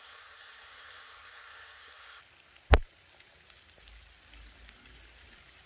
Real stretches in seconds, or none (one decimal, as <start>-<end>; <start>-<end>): 2.2-5.7